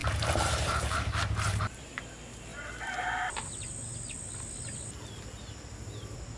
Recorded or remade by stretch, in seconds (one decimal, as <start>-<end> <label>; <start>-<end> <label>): 0.0-2.0 remade; 2.0-6.4 recorded